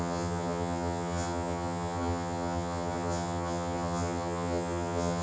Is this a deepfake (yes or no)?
yes